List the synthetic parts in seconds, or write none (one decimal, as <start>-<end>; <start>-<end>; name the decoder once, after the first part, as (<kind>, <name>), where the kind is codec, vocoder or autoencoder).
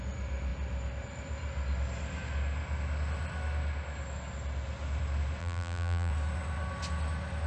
5.4-6.1 (vocoder, BigVGAN v2)